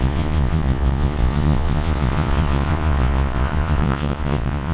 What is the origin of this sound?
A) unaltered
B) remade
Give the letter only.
B